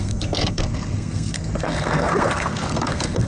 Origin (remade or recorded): remade